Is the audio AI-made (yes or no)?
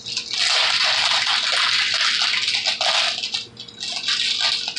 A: no